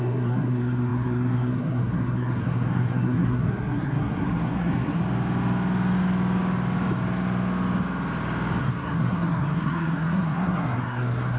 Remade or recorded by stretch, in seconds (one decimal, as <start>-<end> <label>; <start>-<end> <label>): 0.0-5.0 remade; 5.0-8.6 recorded; 8.6-11.4 remade